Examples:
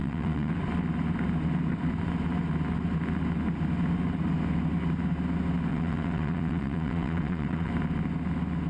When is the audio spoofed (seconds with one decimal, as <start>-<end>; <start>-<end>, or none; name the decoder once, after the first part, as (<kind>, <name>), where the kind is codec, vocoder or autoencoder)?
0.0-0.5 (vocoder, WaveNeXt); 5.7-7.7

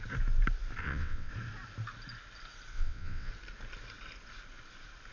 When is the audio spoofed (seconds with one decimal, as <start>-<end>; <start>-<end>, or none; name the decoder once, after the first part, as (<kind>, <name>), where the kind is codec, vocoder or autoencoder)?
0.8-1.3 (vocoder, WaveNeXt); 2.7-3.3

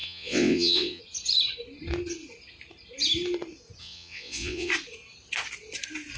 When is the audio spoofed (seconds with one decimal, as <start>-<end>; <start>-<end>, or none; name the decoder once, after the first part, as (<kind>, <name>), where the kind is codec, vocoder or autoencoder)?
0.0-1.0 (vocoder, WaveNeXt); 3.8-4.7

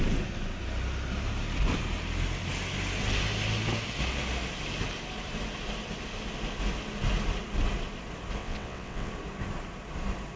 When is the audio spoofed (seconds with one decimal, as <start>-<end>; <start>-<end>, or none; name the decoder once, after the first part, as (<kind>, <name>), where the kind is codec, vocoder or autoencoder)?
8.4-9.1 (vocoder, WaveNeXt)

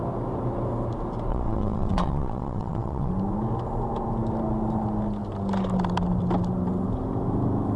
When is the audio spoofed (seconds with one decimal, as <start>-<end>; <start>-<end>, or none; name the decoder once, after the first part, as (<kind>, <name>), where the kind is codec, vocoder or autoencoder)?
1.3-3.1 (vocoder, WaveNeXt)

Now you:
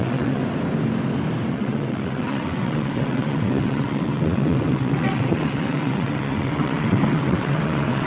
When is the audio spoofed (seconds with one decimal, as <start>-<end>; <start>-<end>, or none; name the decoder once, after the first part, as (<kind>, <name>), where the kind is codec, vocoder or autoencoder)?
0.0-0.4 (vocoder, WaveNeXt); 1.5-8.1